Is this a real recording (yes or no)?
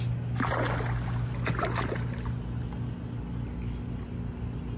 yes